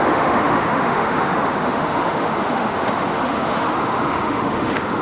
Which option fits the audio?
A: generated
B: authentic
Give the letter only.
A